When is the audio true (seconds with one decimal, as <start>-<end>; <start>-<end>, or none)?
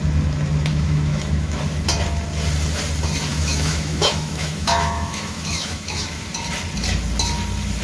0.0-0.7; 1.6-3.3; 6.3-7.8